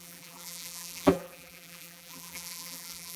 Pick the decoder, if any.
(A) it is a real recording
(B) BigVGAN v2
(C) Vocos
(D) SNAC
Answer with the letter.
B